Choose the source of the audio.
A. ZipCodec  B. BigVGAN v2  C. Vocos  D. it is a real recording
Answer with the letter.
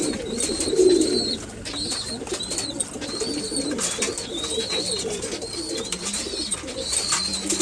D